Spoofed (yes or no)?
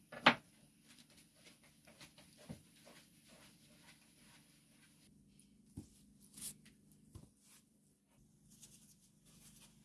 no